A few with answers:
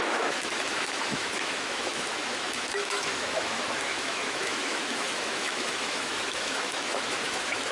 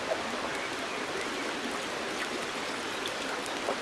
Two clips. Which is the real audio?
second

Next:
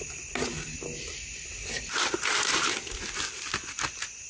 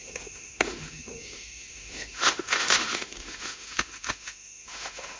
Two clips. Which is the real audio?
first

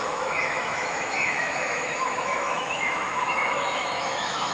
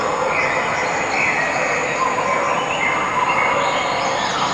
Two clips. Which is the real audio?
second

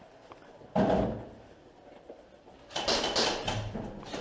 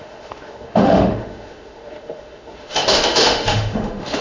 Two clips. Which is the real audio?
first